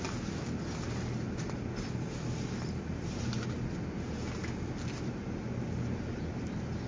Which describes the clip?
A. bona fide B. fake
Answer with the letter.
A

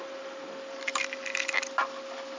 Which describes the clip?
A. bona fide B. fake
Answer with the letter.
A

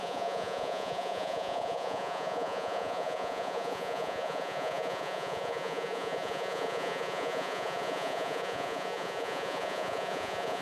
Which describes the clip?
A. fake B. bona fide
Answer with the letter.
A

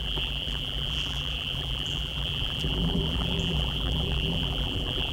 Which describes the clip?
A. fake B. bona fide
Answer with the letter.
A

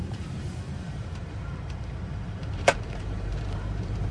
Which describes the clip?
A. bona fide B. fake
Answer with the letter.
B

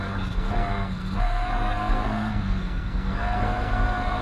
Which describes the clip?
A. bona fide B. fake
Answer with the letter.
B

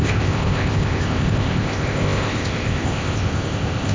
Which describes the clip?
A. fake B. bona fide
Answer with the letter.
A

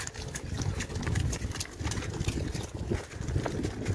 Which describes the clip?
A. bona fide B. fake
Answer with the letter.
A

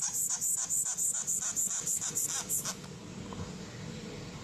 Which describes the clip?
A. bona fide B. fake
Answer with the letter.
A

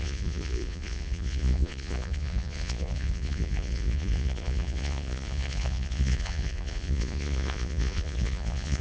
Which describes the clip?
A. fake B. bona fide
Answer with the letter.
A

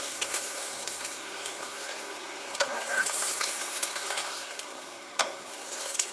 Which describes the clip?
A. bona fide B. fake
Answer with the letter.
B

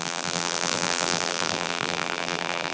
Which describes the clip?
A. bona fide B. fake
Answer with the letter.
B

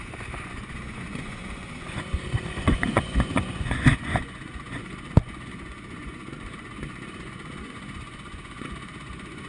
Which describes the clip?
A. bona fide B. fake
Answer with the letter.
B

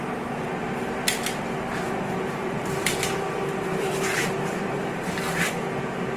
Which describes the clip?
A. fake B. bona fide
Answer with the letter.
A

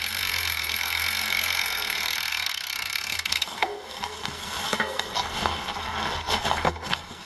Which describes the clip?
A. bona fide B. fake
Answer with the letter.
B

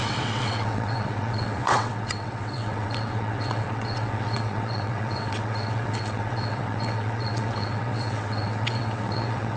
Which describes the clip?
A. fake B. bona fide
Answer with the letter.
A